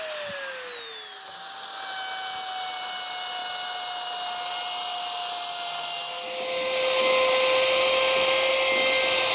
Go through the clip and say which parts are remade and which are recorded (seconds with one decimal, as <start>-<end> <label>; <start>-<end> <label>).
0.0-9.3 recorded